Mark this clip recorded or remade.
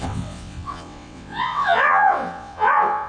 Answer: remade